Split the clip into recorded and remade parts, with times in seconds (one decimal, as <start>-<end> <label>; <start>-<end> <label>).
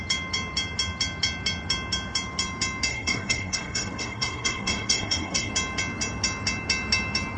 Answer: 0.0-2.9 recorded; 2.9-5.5 remade; 5.5-7.4 recorded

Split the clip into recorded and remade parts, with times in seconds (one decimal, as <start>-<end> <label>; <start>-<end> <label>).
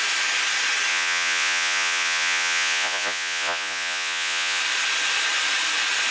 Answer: 0.0-0.9 recorded; 0.9-4.6 remade; 4.6-6.1 recorded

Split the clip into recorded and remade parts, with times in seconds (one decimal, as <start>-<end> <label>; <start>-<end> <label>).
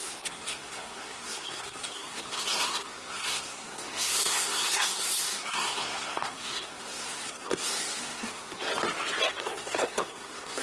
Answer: 0.0-8.7 remade; 8.7-9.3 recorded; 9.3-10.6 remade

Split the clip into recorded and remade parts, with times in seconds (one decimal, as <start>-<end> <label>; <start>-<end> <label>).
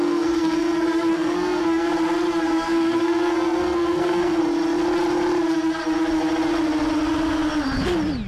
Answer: 0.0-1.9 remade; 1.9-2.4 recorded; 2.4-4.4 remade; 4.4-8.3 recorded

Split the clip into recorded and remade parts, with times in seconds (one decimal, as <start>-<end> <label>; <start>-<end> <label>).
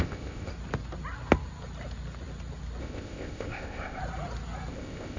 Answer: 0.0-0.5 remade; 0.5-2.8 recorded; 2.8-4.0 remade; 4.0-4.7 recorded; 4.7-5.2 remade